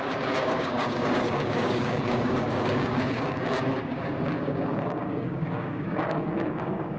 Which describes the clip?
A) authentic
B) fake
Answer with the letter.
B